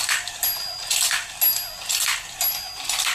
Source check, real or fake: real